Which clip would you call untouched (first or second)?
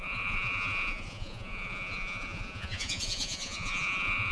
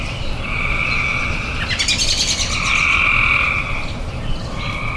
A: second